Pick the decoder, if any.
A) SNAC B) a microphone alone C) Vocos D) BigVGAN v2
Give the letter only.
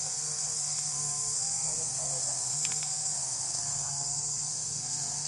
A